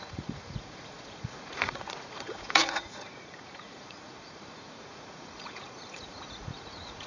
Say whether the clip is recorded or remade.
remade